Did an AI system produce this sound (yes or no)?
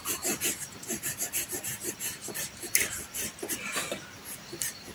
yes